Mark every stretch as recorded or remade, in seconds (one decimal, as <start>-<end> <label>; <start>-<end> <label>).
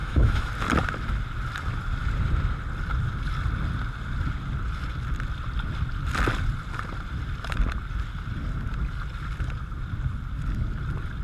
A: 0.0-0.5 remade; 0.5-11.2 recorded